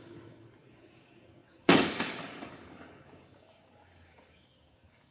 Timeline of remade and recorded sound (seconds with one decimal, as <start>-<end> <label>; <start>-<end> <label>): 0.0-5.1 remade